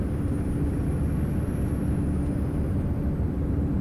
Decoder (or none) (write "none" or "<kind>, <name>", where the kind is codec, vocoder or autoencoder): none